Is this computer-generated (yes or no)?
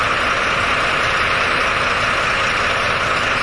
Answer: no